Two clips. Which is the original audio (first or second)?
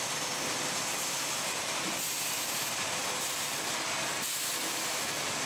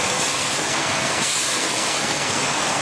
first